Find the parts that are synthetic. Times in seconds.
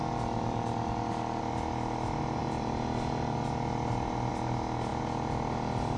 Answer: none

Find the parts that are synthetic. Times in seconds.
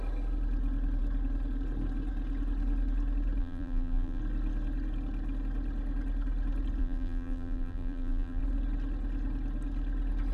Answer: 3.4-4.2 (vocoder, BigVGAN v2); 6.8-8.4